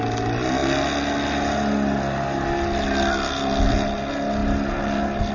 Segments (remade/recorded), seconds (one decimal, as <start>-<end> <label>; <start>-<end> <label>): 0.0-5.3 recorded